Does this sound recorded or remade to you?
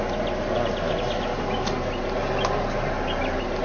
recorded